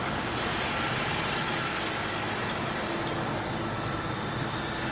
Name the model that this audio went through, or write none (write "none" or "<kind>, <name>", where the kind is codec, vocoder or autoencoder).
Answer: none